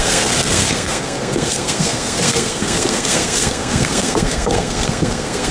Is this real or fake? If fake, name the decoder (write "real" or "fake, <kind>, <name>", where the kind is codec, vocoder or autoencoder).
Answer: fake, codec, SNAC